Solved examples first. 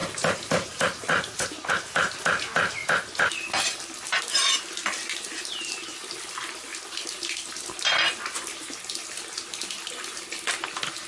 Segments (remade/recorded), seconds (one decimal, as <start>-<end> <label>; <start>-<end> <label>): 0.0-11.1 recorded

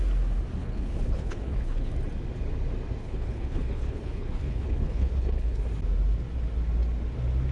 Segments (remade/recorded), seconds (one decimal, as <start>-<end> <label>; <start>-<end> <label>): 0.0-0.6 recorded; 0.6-1.9 remade; 1.9-3.0 recorded; 3.0-5.6 remade; 5.6-7.5 recorded

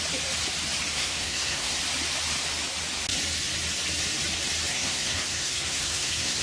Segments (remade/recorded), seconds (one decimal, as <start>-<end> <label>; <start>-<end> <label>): 0.0-0.9 recorded; 0.9-1.8 remade; 1.8-4.7 recorded; 4.7-6.4 remade

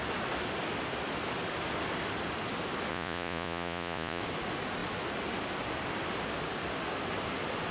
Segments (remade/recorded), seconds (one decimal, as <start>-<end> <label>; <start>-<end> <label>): 0.0-2.9 recorded; 2.9-4.2 remade; 4.2-7.7 recorded

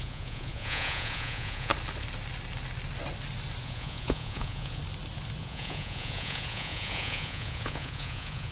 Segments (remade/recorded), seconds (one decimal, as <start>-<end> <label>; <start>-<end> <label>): 0.0-1.7 remade; 1.7-3.6 recorded; 3.6-4.8 remade; 4.8-5.4 recorded; 5.4-8.5 remade

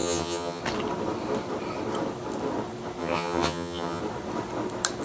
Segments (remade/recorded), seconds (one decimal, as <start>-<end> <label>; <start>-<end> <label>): 0.0-0.6 remade; 0.6-3.0 recorded; 3.0-4.0 remade; 4.0-5.0 recorded

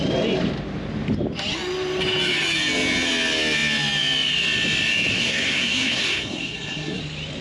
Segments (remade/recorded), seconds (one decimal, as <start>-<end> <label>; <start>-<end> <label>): 0.0-5.1 recorded; 5.1-7.0 remade; 7.0-7.4 recorded